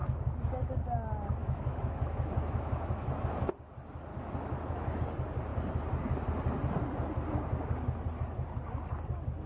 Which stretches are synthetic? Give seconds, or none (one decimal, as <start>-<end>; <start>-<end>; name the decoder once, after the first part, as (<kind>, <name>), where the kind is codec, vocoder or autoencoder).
0.0-0.7 (autoencoder, DAC-VAE); 1.4-3.2; 4.1-5.0